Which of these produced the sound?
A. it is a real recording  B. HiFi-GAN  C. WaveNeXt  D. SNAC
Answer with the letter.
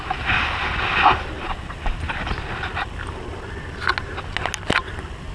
A